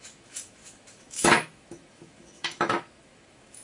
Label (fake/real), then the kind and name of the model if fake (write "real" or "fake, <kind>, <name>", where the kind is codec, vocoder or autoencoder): fake, autoencoder, DAC-VAE